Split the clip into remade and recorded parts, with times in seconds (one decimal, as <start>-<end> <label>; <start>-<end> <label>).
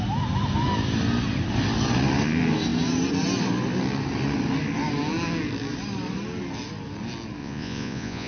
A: 0.0-7.4 recorded; 7.4-8.3 remade